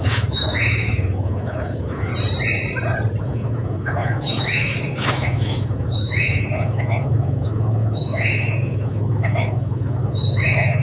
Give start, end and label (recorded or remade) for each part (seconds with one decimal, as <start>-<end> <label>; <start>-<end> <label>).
0.0-2.1 remade; 2.1-3.2 recorded; 3.2-10.8 remade